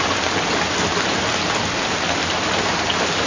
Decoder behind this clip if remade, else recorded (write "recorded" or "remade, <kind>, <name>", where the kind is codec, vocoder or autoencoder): recorded